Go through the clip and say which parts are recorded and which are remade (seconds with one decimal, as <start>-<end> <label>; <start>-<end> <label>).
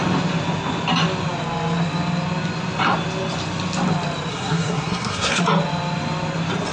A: 0.0-4.3 recorded; 4.3-5.4 remade; 5.4-6.7 recorded